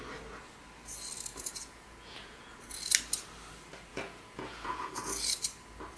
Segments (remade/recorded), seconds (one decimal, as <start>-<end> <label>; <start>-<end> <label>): 0.0-1.3 recorded; 1.3-2.6 remade; 2.6-3.9 recorded; 3.9-4.9 remade; 4.9-6.0 recorded